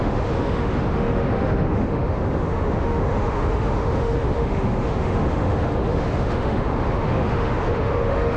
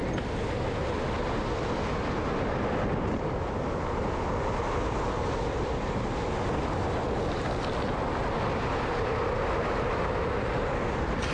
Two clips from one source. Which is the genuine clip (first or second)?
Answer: second